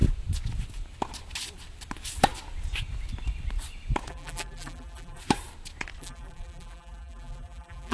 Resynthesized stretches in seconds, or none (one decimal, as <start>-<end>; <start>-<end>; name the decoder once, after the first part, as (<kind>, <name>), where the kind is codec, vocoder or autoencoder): 4.1-5.2 (vocoder, BigVGAN v2); 6.0-7.9

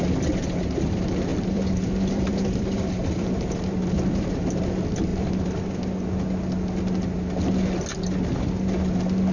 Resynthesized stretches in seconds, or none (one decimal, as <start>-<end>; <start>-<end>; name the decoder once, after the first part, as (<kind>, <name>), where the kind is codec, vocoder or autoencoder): 1.3-4.6 (vocoder, BigVGAN v2); 5.1-5.7

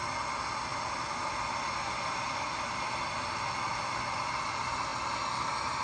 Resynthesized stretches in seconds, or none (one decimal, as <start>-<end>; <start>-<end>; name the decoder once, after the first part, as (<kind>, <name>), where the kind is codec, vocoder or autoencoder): none

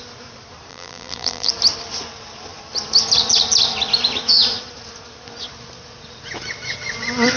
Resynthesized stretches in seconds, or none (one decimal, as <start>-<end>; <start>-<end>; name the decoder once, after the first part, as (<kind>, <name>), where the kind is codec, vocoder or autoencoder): 0.7-1.5 (vocoder, BigVGAN v2)

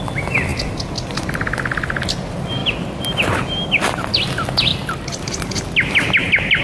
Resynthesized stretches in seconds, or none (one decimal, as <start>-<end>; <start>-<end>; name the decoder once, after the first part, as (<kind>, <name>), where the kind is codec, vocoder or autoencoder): 4.7-5.2 (vocoder, BigVGAN v2)